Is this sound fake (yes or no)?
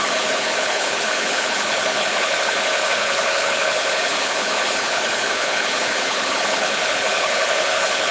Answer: yes